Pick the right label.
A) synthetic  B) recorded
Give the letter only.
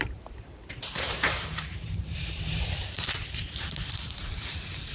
A